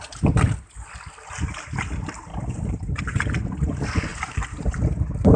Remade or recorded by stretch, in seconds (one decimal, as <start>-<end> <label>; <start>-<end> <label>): 0.0-2.3 recorded; 2.3-3.0 remade; 3.0-4.1 recorded; 4.1-4.8 remade; 4.8-5.4 recorded